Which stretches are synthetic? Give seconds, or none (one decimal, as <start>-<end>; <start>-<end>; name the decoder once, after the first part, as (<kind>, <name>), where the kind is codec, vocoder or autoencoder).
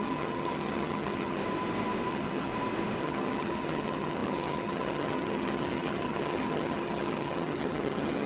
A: 0.0-1.4 (vocoder, HiFi-GAN); 2.1-2.5; 3.0-8.3